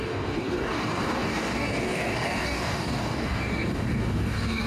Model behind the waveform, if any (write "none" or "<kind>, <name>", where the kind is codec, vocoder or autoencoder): codec, DAC